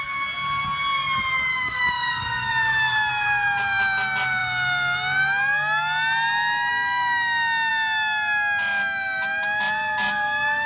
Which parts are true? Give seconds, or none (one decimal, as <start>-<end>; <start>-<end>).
0.0-1.5; 3.1-10.7